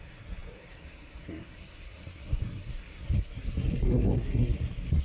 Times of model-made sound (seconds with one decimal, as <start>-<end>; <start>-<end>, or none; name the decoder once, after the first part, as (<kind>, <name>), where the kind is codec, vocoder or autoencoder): 0.0-5.0 (codec, SNAC)